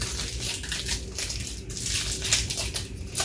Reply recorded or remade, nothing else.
recorded